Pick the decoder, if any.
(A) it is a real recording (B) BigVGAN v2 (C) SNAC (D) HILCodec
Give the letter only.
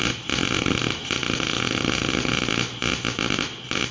A